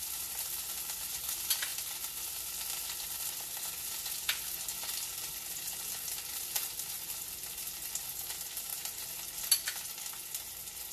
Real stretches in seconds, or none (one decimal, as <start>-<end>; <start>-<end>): 0.0-10.9